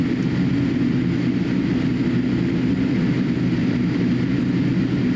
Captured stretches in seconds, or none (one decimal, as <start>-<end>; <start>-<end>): 0.0-3.6; 4.1-5.2